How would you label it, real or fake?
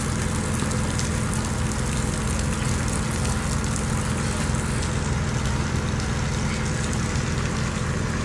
real